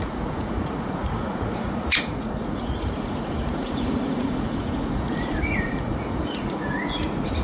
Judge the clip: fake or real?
fake